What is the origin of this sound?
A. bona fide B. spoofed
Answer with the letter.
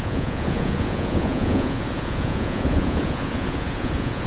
B